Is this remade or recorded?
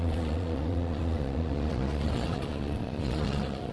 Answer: remade